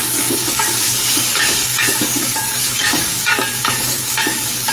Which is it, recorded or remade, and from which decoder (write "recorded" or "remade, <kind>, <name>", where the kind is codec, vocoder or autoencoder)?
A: remade, codec, DAC